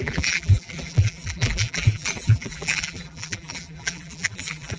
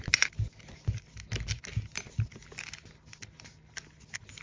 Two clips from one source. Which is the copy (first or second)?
first